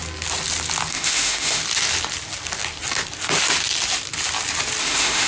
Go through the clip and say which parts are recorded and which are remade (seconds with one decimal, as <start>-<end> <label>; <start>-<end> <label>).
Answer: 0.0-0.9 recorded; 0.9-1.6 remade; 1.6-4.8 recorded; 4.8-5.3 remade